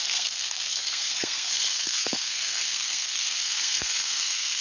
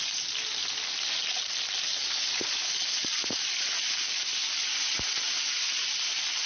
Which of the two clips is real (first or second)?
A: second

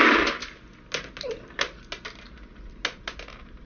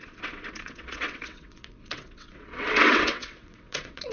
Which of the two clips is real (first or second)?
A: first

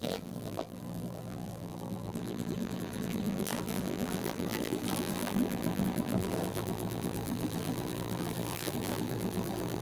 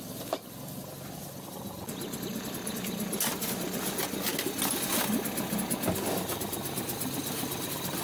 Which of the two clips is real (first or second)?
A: second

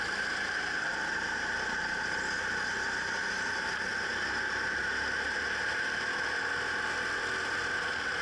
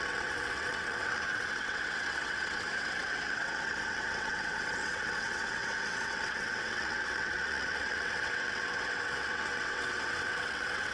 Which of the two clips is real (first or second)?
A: first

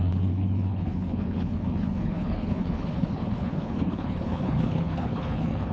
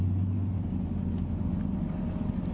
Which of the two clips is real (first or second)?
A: second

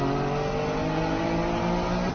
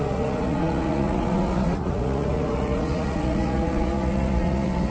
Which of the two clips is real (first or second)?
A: first